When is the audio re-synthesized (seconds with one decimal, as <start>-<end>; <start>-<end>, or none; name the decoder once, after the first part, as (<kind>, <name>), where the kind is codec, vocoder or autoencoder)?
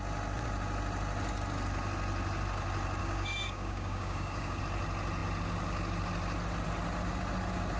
3.0-4.6 (codec, DAC)